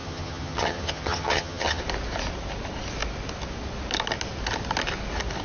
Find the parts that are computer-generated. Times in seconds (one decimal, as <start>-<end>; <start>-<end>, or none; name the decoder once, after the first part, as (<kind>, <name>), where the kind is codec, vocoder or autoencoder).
0.0-1.8 (vocoder, HiFi-GAN)